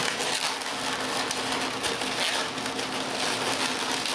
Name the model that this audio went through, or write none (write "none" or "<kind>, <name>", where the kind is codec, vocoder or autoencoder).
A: none